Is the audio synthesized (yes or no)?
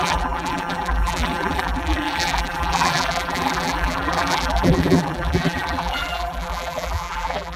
yes